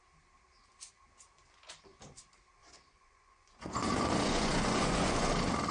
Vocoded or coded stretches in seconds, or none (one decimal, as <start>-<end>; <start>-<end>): 2.6-5.3